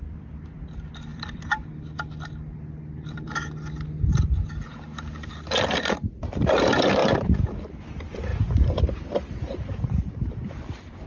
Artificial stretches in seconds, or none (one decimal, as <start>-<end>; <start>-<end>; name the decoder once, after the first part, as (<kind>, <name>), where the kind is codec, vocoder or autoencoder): 7.0-7.6 (vocoder, BigVGAN v2); 8.3-10.5